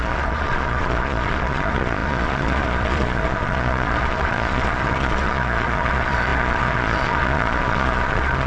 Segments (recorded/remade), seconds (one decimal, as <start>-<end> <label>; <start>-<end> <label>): 0.0-8.5 remade